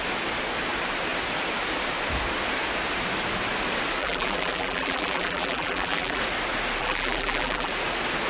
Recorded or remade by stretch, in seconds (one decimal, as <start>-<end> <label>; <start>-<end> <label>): 0.0-4.0 recorded; 4.0-6.2 remade; 6.2-6.8 recorded; 6.8-7.7 remade; 7.7-8.3 recorded